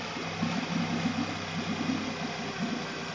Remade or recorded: recorded